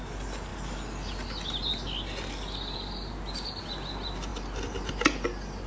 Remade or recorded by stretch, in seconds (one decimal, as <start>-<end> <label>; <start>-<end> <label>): 0.0-4.3 recorded; 4.3-4.9 remade; 4.9-5.7 recorded